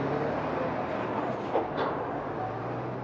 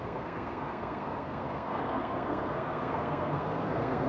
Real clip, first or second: first